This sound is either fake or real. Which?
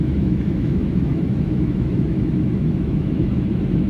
fake